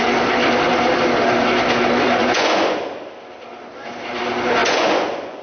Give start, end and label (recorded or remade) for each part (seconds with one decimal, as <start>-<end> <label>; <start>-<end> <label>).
0.0-2.2 recorded; 2.2-2.8 remade; 2.8-4.6 recorded; 4.6-5.4 remade